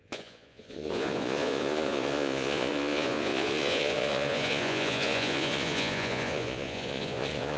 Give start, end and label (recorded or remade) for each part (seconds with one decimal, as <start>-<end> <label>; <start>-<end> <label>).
0.0-7.6 remade